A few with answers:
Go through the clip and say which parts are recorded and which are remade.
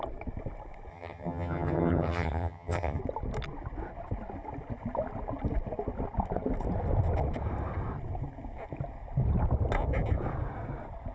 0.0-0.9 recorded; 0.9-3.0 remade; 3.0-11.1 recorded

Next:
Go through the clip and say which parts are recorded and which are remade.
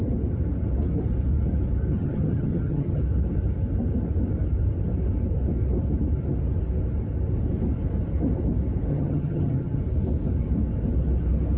0.0-1.9 recorded; 1.9-3.0 remade; 3.0-8.9 recorded; 8.9-9.8 remade; 9.8-11.6 recorded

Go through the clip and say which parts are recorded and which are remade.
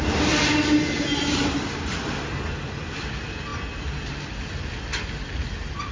0.0-5.9 recorded